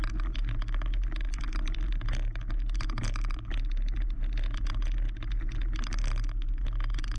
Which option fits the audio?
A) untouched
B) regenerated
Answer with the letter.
A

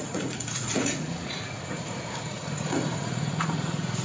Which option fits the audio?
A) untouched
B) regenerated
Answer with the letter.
B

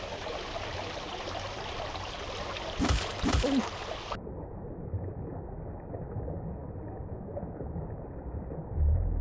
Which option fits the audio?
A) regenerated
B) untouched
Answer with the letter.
B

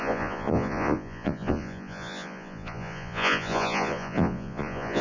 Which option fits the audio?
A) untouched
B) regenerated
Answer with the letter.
B